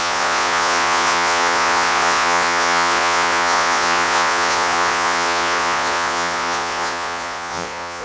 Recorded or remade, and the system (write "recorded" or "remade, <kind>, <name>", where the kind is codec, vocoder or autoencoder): remade, vocoder, Vocos